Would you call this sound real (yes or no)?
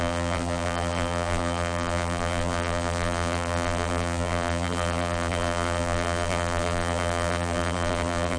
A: no